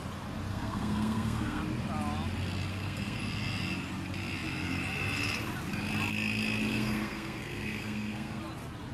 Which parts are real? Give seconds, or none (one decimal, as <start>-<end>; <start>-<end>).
0.0-0.5; 1.6-2.7; 3.2-6.7; 8.4-8.9